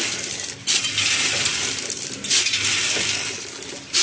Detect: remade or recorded recorded